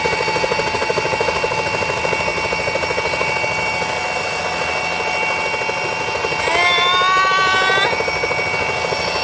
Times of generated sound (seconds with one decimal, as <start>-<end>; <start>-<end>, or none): none